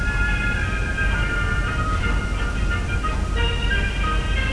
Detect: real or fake real